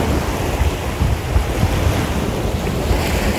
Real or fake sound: real